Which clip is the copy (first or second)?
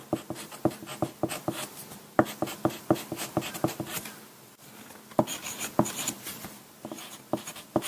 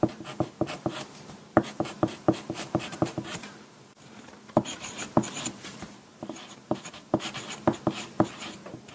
second